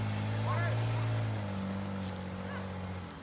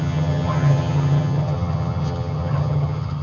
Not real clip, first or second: second